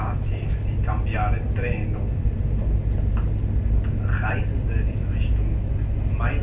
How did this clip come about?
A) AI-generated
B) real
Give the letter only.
B